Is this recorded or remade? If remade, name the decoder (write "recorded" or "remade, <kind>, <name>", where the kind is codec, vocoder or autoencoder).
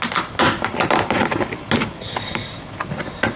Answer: recorded